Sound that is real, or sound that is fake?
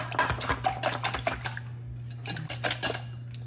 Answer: real